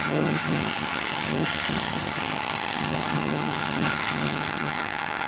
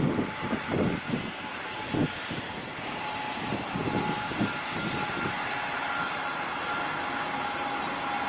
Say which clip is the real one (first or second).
second